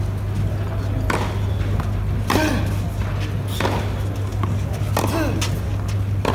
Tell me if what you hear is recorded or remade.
recorded